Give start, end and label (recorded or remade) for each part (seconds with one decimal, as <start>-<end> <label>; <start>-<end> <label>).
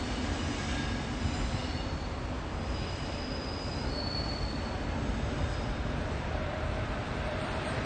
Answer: 0.0-7.9 recorded